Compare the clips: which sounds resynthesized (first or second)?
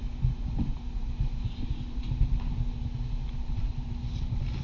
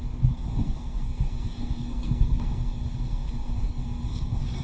second